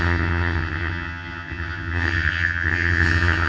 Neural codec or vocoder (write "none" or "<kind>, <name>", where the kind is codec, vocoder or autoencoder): vocoder, HiFi-GAN